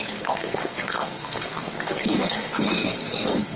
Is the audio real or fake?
fake